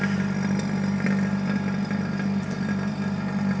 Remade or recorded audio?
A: recorded